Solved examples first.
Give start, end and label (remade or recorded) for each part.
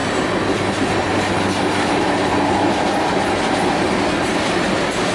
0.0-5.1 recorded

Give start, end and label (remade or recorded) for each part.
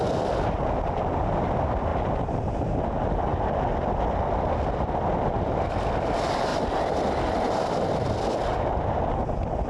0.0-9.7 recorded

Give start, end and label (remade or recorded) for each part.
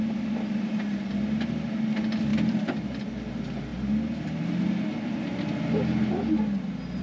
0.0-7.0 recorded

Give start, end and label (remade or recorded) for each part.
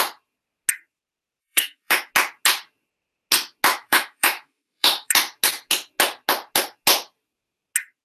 0.0-1.4 recorded; 1.4-2.1 remade; 2.1-3.7 recorded; 3.7-5.1 remade; 5.1-8.0 recorded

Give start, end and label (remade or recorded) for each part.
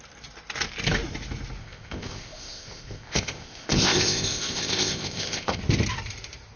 0.0-1.6 recorded; 1.6-5.6 remade; 5.6-6.6 recorded